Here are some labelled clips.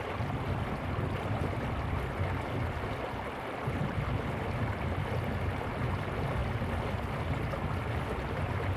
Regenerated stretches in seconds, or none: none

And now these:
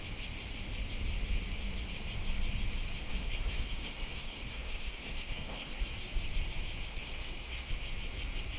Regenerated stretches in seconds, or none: 3.1-5.8 (codec, SNAC); 6.9-7.7